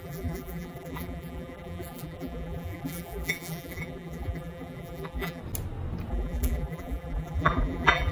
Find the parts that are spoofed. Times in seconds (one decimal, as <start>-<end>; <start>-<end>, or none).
0.0-5.4; 6.1-8.1